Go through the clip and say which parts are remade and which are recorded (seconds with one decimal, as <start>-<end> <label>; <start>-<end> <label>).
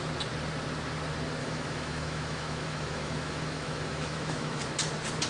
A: 0.0-1.4 recorded; 1.4-4.6 remade; 4.6-5.3 recorded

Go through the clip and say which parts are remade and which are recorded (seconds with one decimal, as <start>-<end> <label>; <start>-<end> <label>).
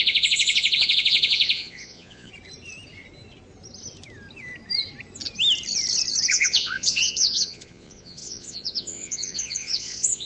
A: 0.0-2.3 remade; 2.3-6.3 recorded; 6.3-10.2 remade